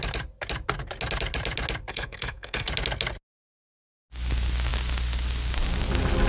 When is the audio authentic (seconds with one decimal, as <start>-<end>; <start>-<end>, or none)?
0.0-1.9; 2.7-6.3